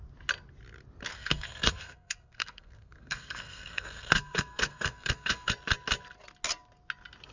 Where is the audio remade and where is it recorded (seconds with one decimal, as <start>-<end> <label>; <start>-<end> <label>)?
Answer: 0.0-1.1 recorded; 1.1-5.5 remade; 5.5-7.3 recorded